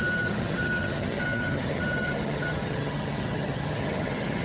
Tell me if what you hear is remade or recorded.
remade